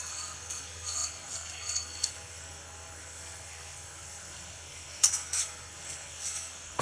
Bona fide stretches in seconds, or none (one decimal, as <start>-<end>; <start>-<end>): none